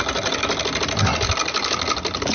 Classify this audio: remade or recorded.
recorded